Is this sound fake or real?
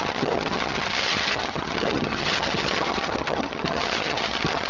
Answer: fake